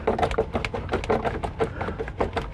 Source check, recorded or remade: recorded